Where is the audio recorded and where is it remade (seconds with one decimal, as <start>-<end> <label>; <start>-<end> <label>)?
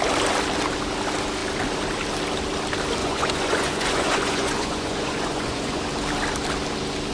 0.0-3.0 recorded; 3.0-5.8 remade; 5.8-7.1 recorded